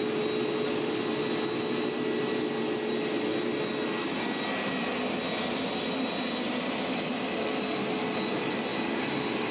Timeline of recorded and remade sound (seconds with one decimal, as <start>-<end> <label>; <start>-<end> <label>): 0.0-9.5 recorded